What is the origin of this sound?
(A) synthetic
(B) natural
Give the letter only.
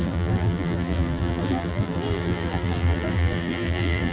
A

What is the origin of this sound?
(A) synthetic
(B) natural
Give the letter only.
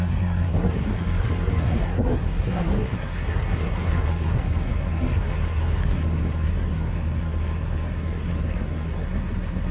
A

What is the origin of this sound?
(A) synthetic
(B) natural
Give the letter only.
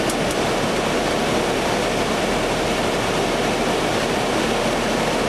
B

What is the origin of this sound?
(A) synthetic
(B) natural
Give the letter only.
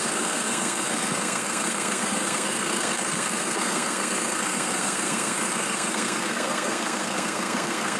A